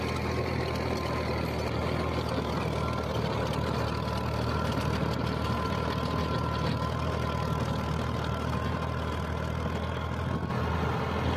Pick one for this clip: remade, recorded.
recorded